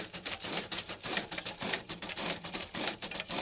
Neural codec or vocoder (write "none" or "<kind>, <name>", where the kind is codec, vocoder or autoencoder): vocoder, BigVGAN v2